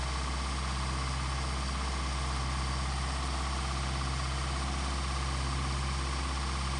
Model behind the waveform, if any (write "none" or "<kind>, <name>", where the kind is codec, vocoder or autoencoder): none